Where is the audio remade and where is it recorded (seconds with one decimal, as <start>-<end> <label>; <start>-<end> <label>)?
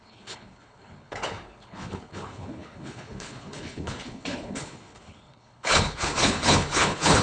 0.0-7.2 remade